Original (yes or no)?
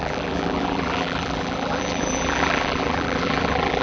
no